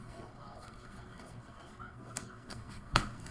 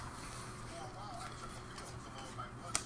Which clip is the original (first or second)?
second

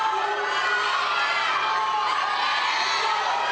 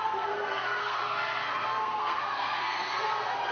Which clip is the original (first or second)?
first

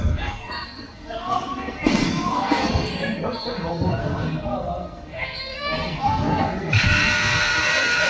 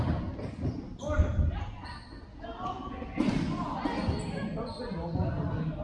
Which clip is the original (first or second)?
second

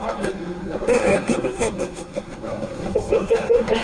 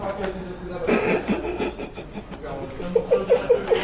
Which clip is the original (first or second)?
second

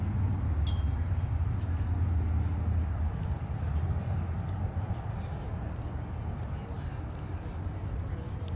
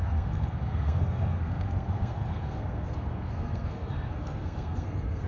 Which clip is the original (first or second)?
first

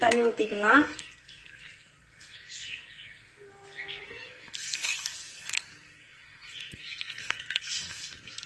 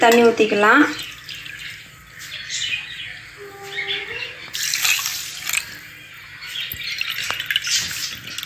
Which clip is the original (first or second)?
second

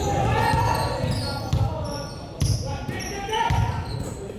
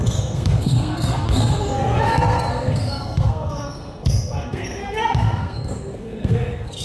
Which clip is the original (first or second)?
first